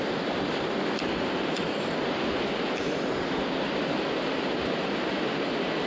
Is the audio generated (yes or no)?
no